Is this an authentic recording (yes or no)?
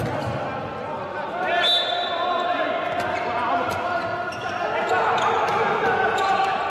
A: yes